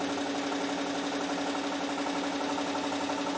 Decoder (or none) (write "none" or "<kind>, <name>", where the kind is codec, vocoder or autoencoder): none